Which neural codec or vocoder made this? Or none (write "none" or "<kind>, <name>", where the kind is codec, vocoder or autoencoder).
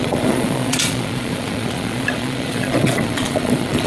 vocoder, Vocos